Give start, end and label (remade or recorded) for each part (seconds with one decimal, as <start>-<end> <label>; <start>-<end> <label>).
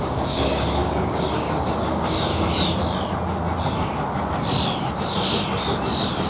0.0-2.3 remade; 2.3-6.3 recorded